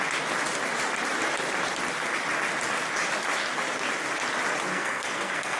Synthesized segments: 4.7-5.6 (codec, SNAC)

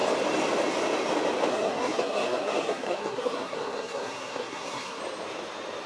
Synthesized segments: 1.5-5.0 (codec, SNAC)

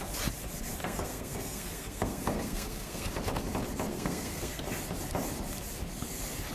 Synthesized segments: 0.8-3.1 (codec, SNAC); 3.9-4.6

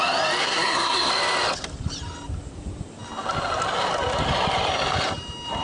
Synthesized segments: 0.4-1.1 (codec, SNAC)

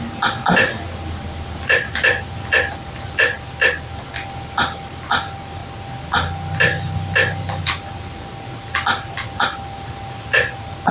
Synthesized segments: none

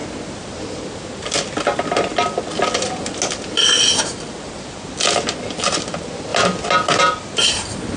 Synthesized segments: none